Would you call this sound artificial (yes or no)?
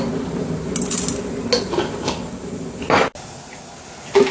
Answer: no